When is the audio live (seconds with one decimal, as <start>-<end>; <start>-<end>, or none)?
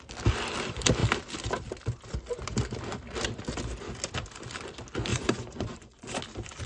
0.0-5.1; 6.2-6.7